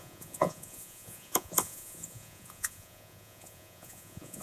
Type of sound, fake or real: fake